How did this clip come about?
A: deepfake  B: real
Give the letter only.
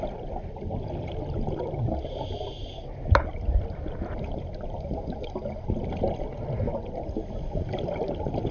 B